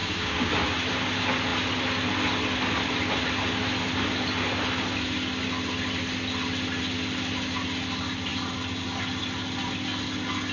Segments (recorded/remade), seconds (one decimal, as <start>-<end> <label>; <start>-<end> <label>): 0.0-0.5 remade; 0.5-10.5 recorded